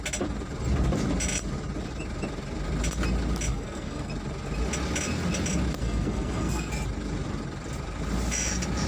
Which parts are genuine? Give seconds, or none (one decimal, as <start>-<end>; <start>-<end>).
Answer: 0.0-3.5; 4.1-5.8; 6.7-8.9